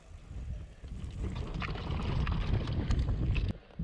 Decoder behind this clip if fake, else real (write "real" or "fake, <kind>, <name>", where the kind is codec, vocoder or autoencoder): real